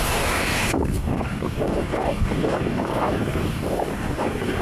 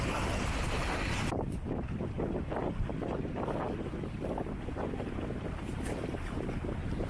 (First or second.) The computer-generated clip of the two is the first